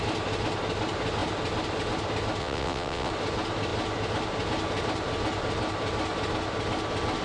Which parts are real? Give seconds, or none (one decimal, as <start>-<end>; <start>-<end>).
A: 0.0-2.4; 3.1-7.2